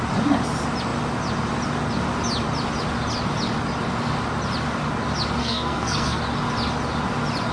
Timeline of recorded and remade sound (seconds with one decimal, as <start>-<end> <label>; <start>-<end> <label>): 0.0-5.4 recorded; 5.4-6.2 remade; 6.2-7.5 recorded